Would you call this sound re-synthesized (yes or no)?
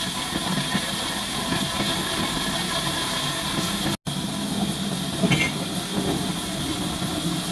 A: no